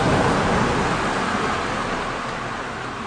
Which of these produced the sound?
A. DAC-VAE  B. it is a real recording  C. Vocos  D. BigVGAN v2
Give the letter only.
B